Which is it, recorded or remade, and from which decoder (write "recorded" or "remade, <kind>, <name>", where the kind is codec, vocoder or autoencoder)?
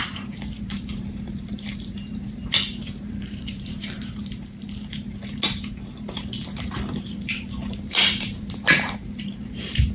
remade, vocoder, BigVGAN v2